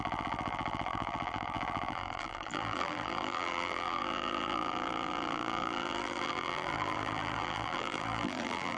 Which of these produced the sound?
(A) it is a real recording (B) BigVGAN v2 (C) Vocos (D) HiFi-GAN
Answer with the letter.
B